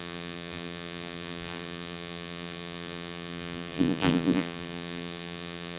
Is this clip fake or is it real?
fake